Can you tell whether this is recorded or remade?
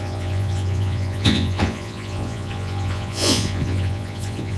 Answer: remade